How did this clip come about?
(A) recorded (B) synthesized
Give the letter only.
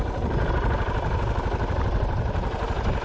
A